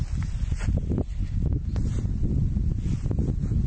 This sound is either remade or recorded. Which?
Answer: recorded